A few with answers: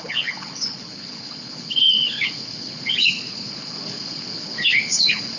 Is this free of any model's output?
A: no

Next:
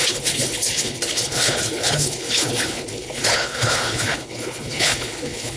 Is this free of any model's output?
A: no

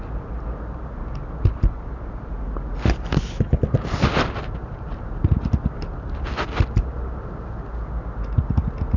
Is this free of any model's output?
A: yes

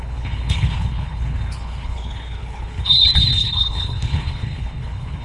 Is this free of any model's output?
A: no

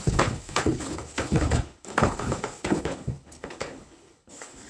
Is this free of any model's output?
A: no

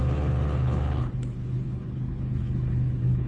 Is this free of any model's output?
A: no